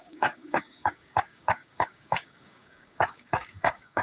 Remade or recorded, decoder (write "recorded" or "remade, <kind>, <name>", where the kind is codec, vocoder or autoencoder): remade, codec, DAC